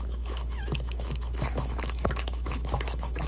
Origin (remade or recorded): remade